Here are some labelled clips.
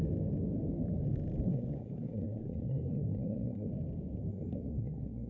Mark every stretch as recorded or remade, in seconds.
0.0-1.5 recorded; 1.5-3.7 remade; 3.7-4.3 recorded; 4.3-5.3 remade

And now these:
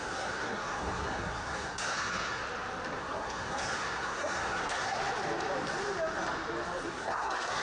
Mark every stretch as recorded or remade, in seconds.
0.0-2.4 remade; 2.4-3.0 recorded; 3.0-5.0 remade; 5.0-6.9 recorded; 6.9-7.6 remade

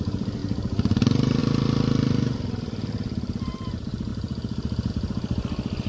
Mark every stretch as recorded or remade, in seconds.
0.0-5.9 recorded

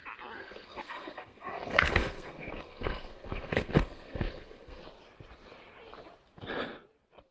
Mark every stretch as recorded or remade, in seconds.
0.0-0.4 recorded; 0.4-4.8 remade; 4.8-7.3 recorded